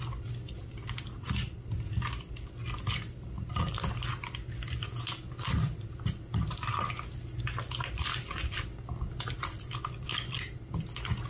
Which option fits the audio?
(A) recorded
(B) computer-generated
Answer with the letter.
A